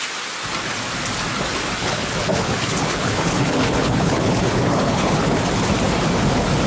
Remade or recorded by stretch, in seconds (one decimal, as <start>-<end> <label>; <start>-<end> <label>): 0.0-1.8 recorded; 1.8-5.4 remade; 5.4-6.7 recorded